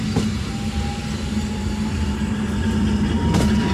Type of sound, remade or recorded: recorded